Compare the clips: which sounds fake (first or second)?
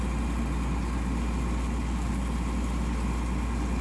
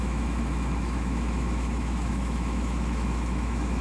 second